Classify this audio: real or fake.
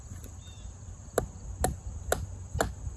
real